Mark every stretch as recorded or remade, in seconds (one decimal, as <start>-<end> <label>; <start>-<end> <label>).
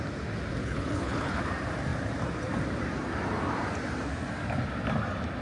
0.0-0.6 recorded; 0.6-1.4 remade; 1.4-5.4 recorded